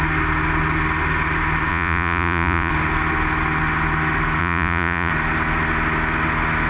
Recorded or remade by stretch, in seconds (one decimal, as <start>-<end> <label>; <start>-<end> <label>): 0.0-1.7 recorded; 1.7-2.7 remade; 2.7-4.4 recorded; 4.4-5.1 remade; 5.1-6.7 recorded